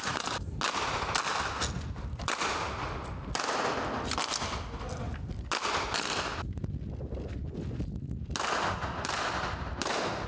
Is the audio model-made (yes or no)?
no